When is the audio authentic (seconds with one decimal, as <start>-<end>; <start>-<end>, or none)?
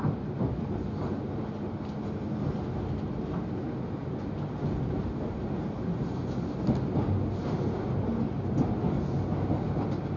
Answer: 0.0-10.2